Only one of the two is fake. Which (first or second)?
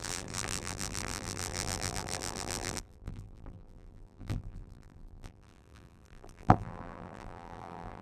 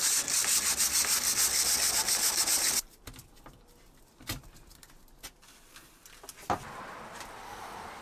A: first